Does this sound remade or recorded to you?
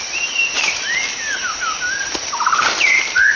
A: remade